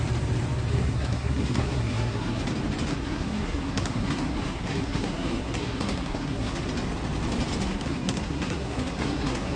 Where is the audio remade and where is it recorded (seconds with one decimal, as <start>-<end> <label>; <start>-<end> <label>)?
0.0-0.7 recorded; 0.7-2.4 remade; 2.4-2.9 recorded; 2.9-6.6 remade; 6.6-7.6 recorded; 7.6-9.6 remade